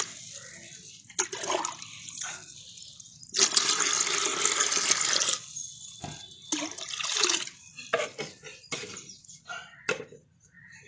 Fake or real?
real